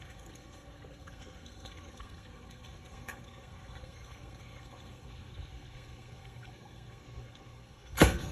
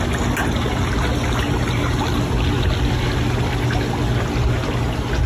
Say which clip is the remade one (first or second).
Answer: first